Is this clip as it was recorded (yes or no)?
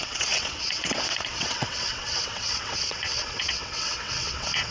no